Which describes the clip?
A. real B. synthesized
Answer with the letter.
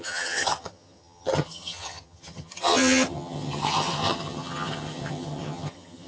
B